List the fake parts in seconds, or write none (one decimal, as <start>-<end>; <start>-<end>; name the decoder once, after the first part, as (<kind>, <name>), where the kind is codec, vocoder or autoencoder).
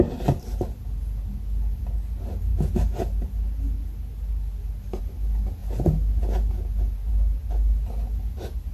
none